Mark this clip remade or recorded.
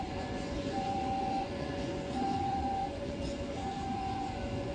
remade